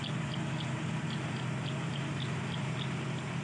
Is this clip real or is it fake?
real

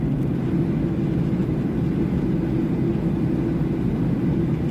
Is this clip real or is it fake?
real